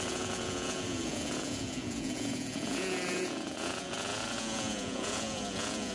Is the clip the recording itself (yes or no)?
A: no